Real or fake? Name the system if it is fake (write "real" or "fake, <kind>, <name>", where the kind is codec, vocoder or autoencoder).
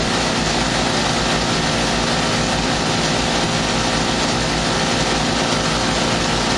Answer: real